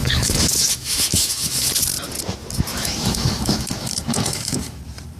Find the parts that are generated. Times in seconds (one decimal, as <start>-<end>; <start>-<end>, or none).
0.0-1.7; 2.7-4.8